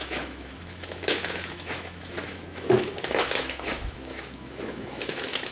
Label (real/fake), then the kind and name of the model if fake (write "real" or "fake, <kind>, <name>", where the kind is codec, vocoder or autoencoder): fake, autoencoder, DAC-VAE